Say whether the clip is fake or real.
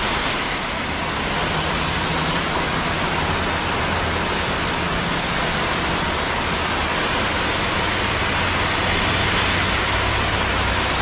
real